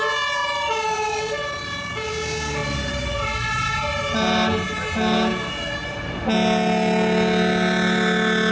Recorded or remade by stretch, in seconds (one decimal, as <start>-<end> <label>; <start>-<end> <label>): 0.0-0.4 recorded; 0.4-2.1 remade; 2.1-2.6 recorded; 2.6-3.5 remade; 3.5-8.5 recorded